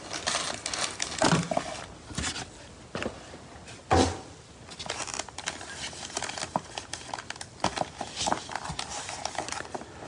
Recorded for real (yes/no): yes